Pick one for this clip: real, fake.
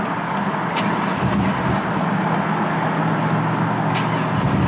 real